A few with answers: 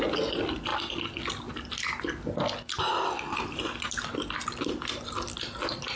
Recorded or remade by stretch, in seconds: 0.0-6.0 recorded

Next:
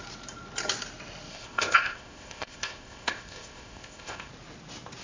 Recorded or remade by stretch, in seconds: 0.0-1.3 recorded; 1.3-4.3 remade; 4.3-5.0 recorded

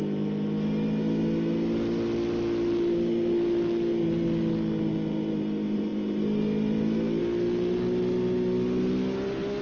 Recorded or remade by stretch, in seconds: 0.0-9.6 recorded

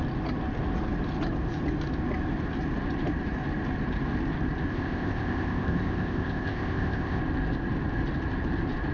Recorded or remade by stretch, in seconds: 0.0-4.7 recorded; 4.7-7.2 remade; 7.2-8.9 recorded

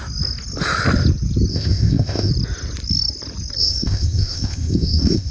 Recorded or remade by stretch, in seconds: 0.0-1.5 recorded; 1.5-2.3 remade; 2.3-3.6 recorded; 3.6-5.3 remade